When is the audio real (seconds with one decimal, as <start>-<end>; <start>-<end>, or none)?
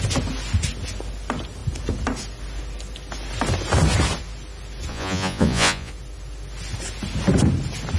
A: 0.0-4.9; 5.9-8.0